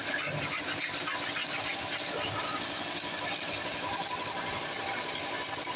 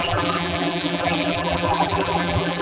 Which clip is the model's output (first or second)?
second